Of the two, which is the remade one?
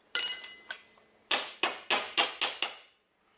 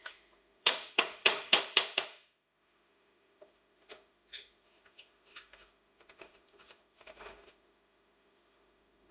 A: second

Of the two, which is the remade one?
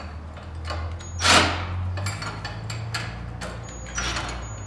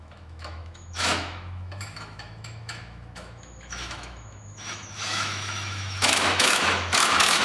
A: second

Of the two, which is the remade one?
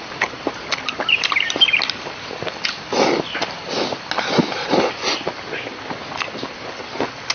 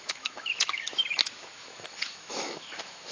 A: second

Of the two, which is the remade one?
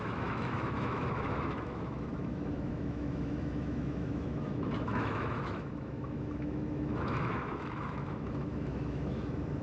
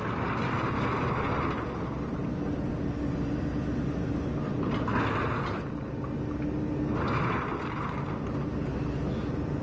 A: first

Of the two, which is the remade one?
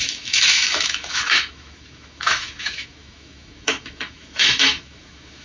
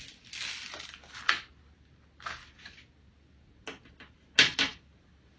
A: first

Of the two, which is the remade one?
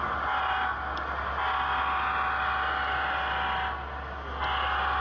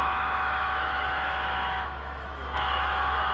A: second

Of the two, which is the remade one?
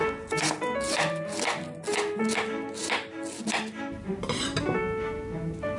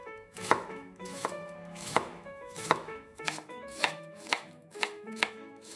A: second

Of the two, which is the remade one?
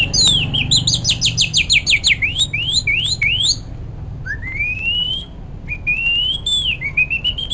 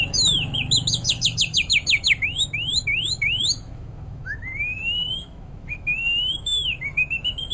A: second